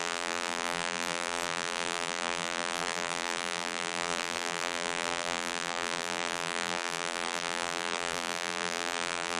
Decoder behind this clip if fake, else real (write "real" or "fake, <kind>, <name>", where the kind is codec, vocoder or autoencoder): fake, vocoder, BigVGAN v2